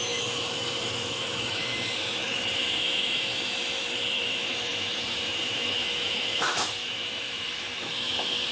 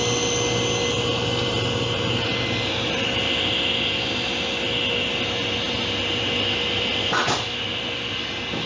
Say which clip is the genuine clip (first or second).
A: second